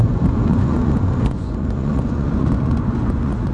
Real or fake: fake